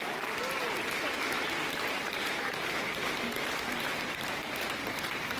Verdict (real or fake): fake